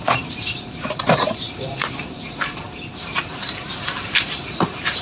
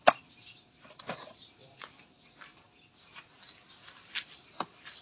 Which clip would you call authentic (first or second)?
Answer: second